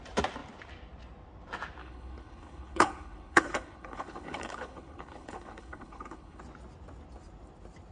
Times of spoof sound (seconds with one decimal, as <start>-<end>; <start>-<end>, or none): 1.8-6.4